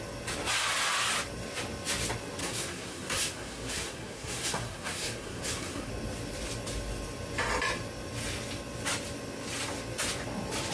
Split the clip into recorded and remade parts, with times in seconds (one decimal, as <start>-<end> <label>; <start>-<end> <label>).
0.0-2.4 recorded; 2.4-5.9 remade; 5.9-10.7 recorded